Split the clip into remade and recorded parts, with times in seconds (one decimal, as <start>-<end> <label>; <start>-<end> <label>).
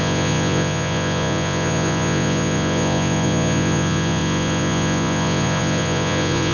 0.0-6.5 remade